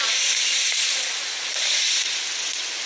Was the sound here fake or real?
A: real